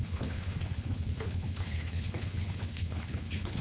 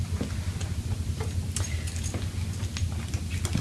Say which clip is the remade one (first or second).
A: first